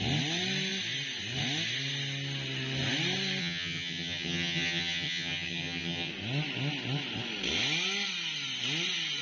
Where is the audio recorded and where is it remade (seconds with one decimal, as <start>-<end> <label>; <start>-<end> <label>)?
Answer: 0.0-3.4 recorded; 3.4-6.1 remade; 6.1-9.2 recorded